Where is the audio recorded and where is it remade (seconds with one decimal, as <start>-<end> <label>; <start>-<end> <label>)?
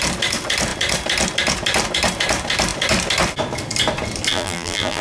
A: 0.0-4.3 recorded; 4.3-5.0 remade